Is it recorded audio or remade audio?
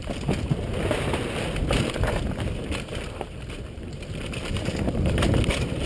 remade